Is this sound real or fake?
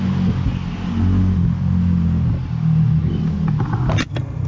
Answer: real